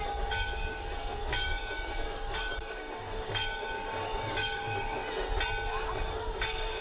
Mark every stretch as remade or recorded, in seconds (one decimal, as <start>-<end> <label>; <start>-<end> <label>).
0.0-5.0 remade; 5.0-5.7 recorded; 5.7-6.8 remade